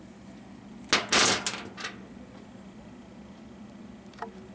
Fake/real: real